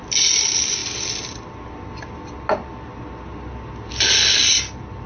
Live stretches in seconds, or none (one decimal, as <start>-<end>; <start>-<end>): 0.0-5.1